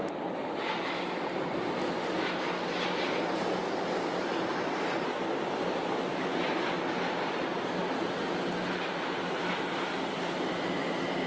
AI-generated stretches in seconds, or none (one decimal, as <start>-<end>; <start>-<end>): none